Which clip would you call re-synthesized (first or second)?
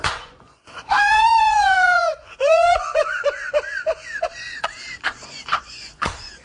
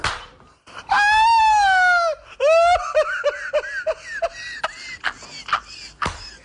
first